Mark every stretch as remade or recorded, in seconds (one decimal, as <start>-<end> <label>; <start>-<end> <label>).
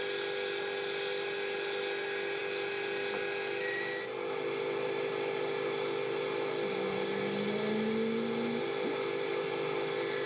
0.0-10.3 recorded